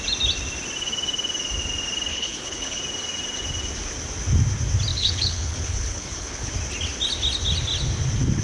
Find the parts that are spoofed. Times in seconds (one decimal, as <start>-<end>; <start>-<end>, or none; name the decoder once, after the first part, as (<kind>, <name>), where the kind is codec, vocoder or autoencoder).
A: 2.1-2.8 (codec, HILCodec); 4.9-6.5